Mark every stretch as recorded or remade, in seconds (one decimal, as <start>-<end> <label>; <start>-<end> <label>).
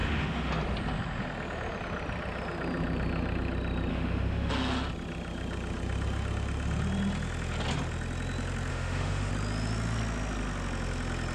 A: 0.0-0.5 remade; 0.5-3.9 recorded; 3.9-4.5 remade; 4.5-8.7 recorded; 8.7-9.3 remade; 9.3-11.3 recorded